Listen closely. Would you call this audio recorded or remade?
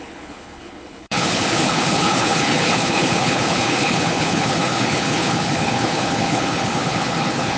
remade